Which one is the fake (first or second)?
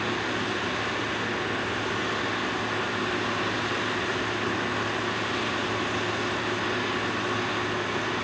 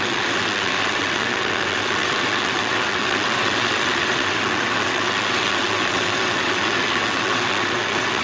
second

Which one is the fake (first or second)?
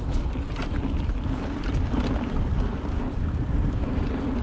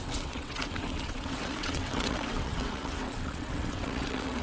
second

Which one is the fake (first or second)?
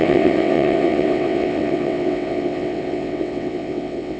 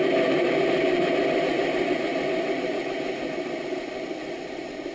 first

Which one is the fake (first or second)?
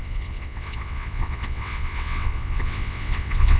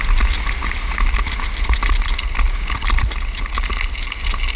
first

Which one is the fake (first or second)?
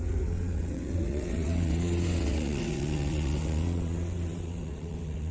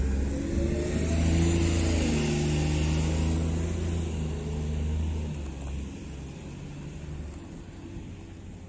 first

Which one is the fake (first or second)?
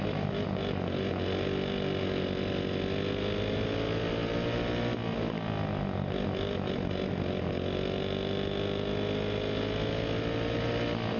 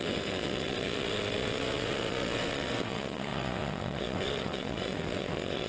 second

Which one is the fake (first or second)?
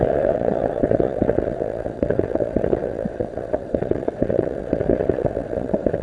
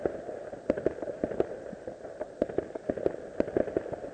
first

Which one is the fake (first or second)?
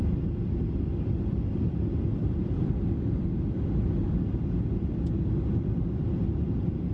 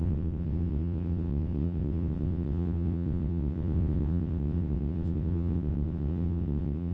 second